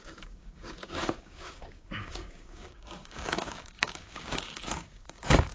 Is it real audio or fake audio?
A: fake